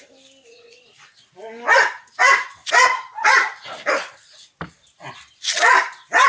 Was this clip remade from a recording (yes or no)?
no